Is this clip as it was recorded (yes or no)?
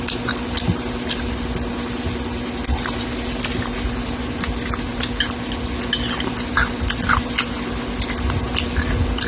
yes